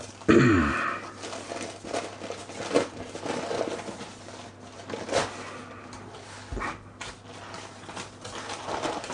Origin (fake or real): real